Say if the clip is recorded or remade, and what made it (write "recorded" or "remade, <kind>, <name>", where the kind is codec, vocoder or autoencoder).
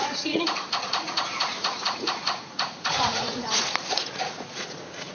remade, vocoder, Vocos